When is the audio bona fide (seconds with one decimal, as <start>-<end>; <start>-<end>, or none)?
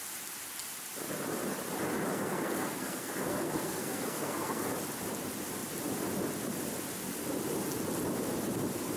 0.0-2.1; 4.7-9.0